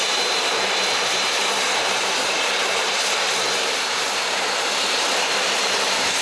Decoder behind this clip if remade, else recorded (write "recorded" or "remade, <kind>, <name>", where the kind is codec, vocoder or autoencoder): remade, vocoder, BigVGAN v2